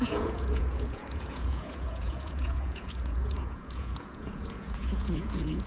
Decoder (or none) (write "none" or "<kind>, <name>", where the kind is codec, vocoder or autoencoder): vocoder, Vocos